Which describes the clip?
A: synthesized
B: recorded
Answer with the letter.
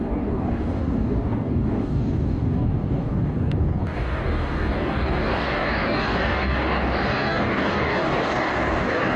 A